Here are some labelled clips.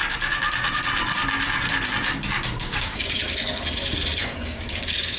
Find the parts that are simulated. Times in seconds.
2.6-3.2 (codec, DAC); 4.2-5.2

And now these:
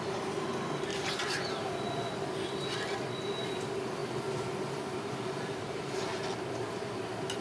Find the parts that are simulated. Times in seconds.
0.9-1.7 (vocoder, BigVGAN v2)

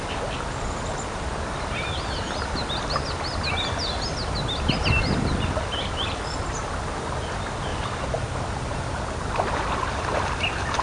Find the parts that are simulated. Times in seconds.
none

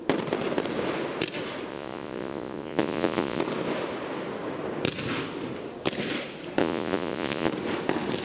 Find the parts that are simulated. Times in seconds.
1.7-3.4 (vocoder, Vocos); 6.6-7.5

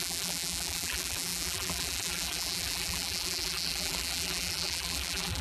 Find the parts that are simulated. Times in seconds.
0.0-5.4 (vocoder, BigVGAN v2)

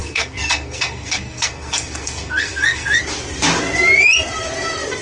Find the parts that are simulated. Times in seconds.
0.0-3.0 (codec, SNAC)

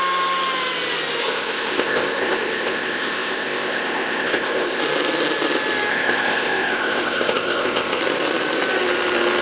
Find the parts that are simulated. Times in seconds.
1.2-4.8 (codec, ZipCodec); 5.9-8.0

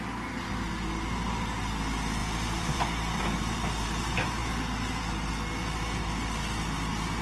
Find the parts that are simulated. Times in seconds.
2.2-3.2 (vocoder, BigVGAN v2)